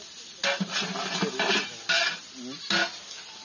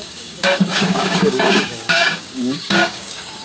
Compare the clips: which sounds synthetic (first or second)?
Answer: second